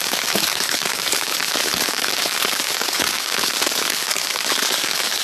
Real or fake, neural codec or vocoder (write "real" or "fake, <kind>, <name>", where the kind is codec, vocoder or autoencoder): fake, codec, DAC